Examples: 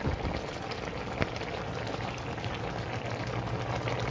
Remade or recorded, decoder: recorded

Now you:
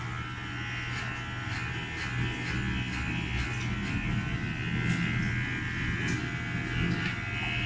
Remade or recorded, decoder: recorded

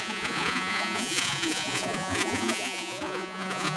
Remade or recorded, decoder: remade, vocoder, Vocos